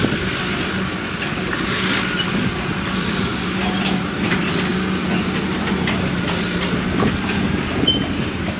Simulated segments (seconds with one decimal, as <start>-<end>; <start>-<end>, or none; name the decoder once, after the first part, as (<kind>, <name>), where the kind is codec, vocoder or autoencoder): none